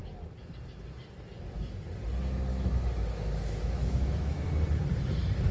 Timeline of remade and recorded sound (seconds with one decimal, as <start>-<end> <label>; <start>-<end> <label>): 0.0-2.5 recorded; 2.5-4.5 remade; 4.5-5.5 recorded